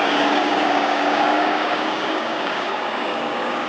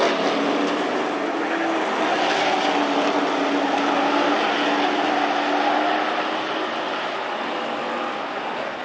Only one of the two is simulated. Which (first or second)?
first